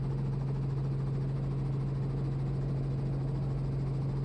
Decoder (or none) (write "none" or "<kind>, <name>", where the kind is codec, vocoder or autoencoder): none